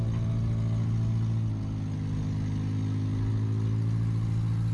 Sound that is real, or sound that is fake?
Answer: real